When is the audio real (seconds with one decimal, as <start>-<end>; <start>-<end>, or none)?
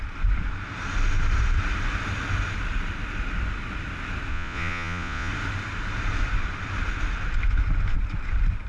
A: 0.0-4.3; 5.3-8.7